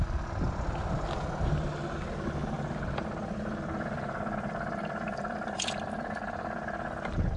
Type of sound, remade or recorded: recorded